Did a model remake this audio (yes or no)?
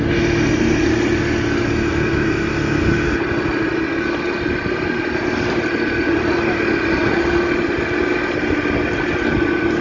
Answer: no